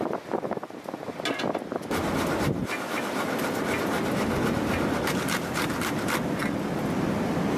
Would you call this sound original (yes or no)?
yes